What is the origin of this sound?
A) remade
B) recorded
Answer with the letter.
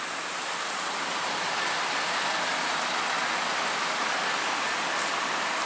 B